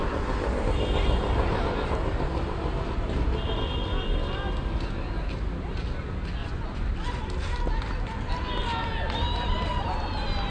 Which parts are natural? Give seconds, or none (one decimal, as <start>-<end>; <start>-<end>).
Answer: 0.0-6.4; 6.9-10.5